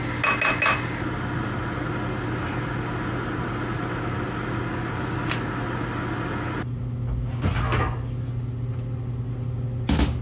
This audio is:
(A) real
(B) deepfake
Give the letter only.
A